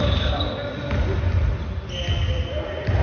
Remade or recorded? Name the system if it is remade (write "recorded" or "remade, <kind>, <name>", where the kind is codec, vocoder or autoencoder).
recorded